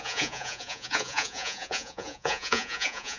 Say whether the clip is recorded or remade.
remade